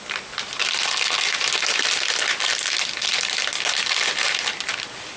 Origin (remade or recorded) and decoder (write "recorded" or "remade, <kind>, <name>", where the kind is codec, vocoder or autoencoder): recorded